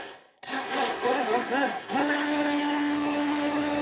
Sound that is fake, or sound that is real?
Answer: fake